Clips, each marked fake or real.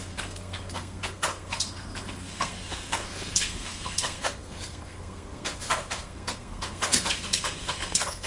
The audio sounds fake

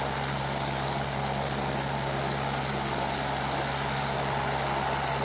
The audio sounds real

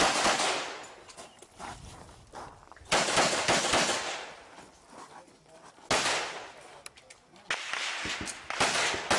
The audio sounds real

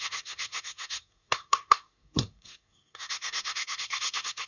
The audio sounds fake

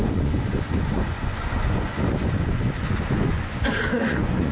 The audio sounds fake